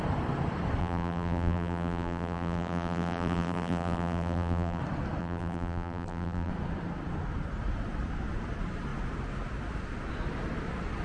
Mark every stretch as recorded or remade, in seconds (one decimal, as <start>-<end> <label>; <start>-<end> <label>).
0.0-0.8 recorded; 0.8-4.8 remade; 4.8-5.2 recorded; 5.2-6.5 remade; 6.5-11.0 recorded